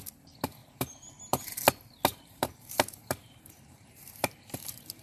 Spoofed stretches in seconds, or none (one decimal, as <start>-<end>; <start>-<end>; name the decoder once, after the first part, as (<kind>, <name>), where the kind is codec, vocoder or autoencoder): 0.6-1.6 (vocoder, BigVGAN v2); 2.1-5.0